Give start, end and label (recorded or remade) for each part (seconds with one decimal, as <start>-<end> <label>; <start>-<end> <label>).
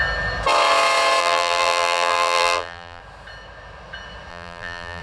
0.0-1.2 recorded; 1.2-3.0 remade; 3.0-4.3 recorded; 4.3-5.0 remade